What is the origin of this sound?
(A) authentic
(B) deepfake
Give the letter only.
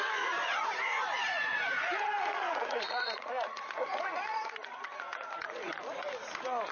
B